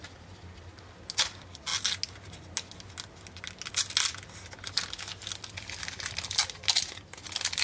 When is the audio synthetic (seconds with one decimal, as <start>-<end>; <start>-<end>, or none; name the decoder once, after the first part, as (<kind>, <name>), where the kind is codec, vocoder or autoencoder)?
none